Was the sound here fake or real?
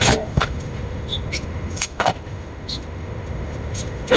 fake